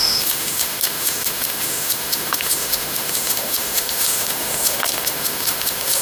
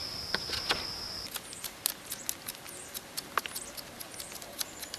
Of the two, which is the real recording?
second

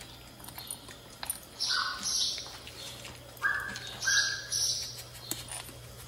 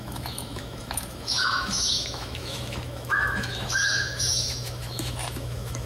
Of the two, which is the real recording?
first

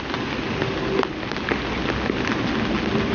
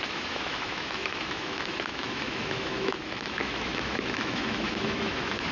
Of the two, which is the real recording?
first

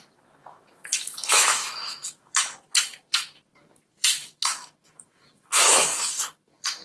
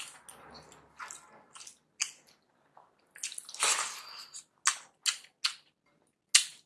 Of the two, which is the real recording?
second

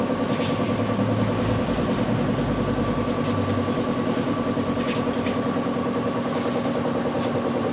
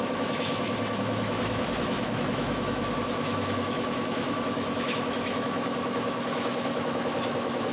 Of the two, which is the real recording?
first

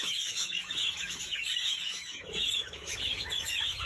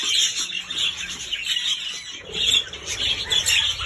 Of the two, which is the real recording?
second